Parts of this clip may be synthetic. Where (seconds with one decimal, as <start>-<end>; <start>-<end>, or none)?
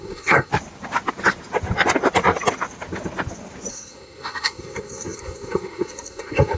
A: 0.0-0.5; 3.7-6.6